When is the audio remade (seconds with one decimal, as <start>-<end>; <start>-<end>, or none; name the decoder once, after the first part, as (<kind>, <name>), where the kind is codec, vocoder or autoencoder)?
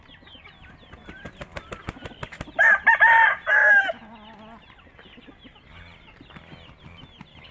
none